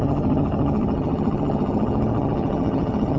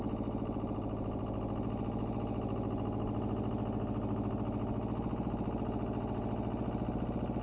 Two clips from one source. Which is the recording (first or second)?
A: second